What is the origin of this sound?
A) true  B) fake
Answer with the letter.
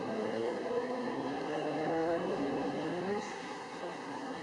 B